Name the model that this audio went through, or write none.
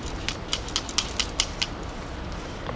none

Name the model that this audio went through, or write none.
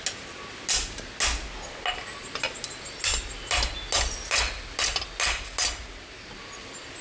none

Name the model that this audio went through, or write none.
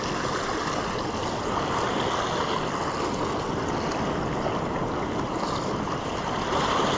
none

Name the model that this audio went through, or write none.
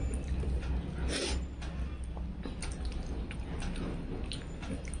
none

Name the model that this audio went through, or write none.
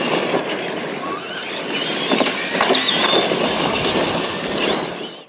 none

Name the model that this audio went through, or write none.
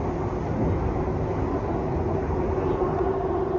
none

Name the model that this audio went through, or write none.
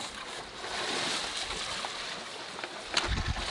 none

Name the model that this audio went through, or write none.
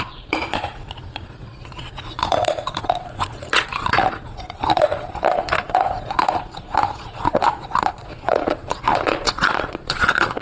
vocoder, Vocos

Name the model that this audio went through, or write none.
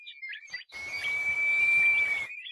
none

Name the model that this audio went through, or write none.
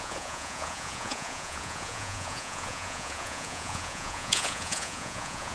vocoder, Vocos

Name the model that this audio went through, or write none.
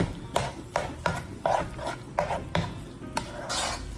none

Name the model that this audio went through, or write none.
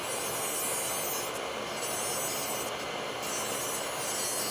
none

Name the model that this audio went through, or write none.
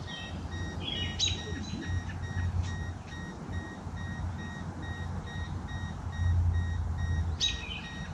none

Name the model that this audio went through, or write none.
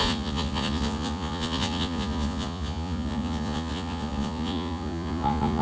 vocoder, Vocos